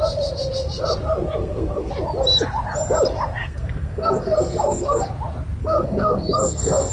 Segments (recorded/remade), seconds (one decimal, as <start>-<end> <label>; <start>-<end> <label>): 0.0-1.4 recorded; 1.4-1.9 remade; 1.9-3.4 recorded; 3.4-5.1 remade; 5.1-5.6 recorded; 5.6-6.9 remade